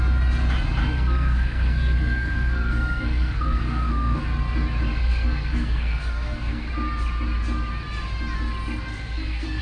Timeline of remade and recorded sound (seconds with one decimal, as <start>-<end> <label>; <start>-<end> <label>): 0.0-0.8 recorded; 0.8-4.2 remade; 4.2-4.9 recorded; 4.9-6.7 remade; 6.7-8.9 recorded; 8.9-9.6 remade